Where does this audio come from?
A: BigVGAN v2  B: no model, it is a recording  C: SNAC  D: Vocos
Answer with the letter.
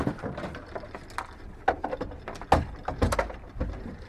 B